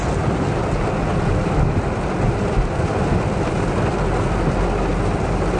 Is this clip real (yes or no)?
yes